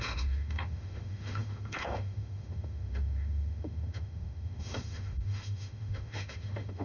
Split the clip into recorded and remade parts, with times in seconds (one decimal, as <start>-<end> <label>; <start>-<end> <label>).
0.0-6.8 remade